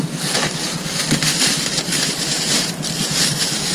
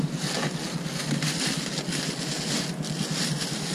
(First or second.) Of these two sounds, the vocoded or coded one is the first